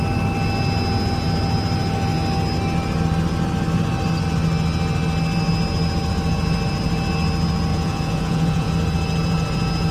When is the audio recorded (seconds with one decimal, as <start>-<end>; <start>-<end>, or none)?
0.0-7.7; 8.7-9.9